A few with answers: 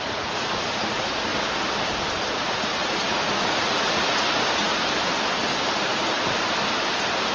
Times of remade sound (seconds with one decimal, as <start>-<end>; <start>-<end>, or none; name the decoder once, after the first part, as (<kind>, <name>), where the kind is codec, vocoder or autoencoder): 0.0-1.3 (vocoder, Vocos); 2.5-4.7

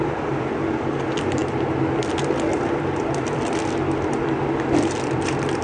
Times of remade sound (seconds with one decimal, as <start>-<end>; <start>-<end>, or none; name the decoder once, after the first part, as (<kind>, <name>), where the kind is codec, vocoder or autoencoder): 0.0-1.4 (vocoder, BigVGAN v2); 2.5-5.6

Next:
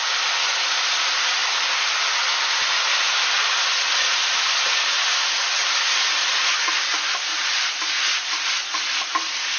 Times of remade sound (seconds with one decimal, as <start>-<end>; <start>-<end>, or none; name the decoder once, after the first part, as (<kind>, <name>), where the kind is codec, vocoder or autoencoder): 0.0-9.6 (vocoder, BigVGAN v2)

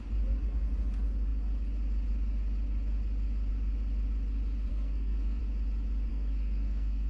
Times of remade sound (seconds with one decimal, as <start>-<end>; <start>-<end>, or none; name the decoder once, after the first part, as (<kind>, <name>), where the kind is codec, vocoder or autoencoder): 4.7-5.4 (codec, SNAC); 6.1-7.1

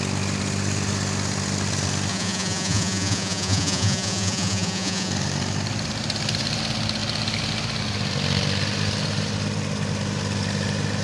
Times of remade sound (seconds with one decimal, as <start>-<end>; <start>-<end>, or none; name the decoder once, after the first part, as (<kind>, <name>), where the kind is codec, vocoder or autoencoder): 2.1-5.1 (vocoder, Vocos)